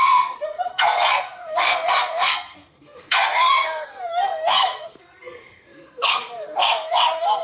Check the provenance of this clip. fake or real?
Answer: fake